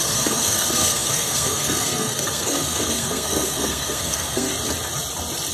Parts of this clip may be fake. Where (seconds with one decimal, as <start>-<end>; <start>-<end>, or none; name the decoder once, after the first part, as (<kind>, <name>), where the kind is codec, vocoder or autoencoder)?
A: 0.0-4.5 (codec, SNAC)